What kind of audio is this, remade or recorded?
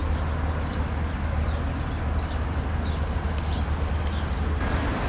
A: recorded